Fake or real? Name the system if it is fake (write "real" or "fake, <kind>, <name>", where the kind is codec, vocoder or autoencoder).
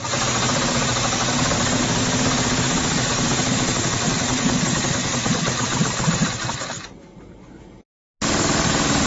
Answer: real